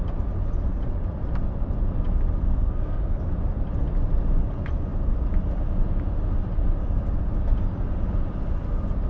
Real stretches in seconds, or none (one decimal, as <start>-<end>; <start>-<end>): 0.0-2.4; 3.3-9.1